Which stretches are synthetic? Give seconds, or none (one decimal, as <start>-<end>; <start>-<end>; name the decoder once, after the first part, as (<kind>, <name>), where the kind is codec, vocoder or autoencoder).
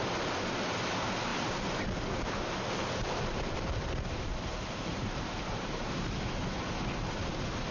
1.3-5.9 (vocoder, BigVGAN v2)